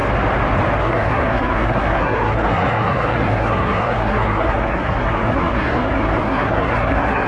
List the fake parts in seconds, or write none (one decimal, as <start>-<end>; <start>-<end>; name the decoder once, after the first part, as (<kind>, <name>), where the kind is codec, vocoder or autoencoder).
0.8-7.3 (codec, SNAC)